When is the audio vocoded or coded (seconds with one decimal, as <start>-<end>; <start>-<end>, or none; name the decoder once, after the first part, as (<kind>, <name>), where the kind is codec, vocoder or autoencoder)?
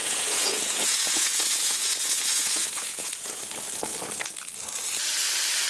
0.0-3.4 (vocoder, Vocos)